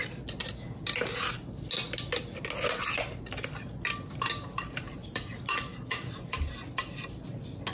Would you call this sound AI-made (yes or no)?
no